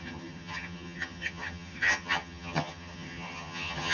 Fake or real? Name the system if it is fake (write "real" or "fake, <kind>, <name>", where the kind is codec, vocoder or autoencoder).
fake, vocoder, HiFi-GAN